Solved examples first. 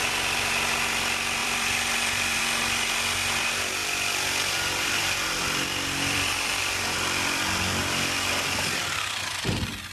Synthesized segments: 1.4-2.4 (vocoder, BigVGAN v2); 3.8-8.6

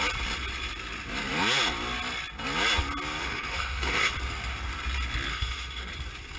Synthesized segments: 3.2-4.1 (autoencoder, DAC-VAE); 5.3-5.9

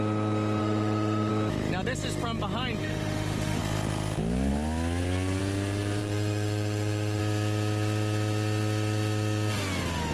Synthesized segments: 0.6-1.3 (autoencoder, DAC-VAE); 2.8-3.6; 6.0-7.2

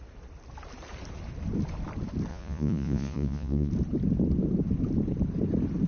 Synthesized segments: 2.3-3.7 (vocoder, Vocos)

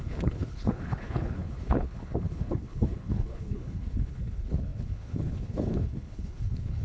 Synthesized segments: 0.0-6.8 (codec, HILCodec)

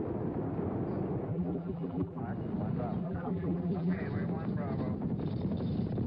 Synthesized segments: 1.3-2.2 (vocoder, BigVGAN v2); 3.0-4.0

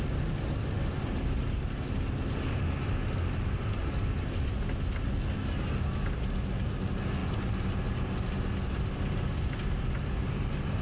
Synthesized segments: none